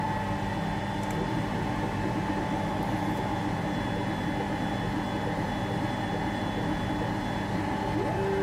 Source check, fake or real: real